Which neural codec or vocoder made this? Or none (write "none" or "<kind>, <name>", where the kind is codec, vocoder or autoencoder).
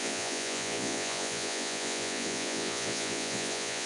vocoder, Vocos